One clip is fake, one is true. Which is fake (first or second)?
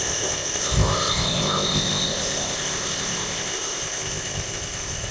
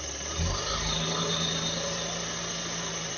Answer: first